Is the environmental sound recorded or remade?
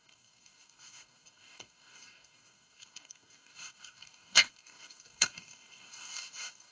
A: remade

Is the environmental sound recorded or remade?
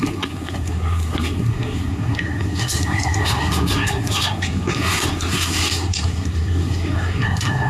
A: remade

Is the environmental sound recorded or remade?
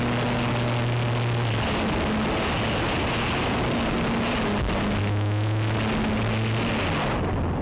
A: recorded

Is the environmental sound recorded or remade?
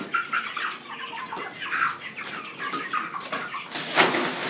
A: recorded